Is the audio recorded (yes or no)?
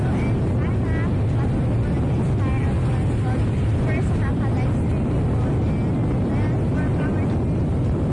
yes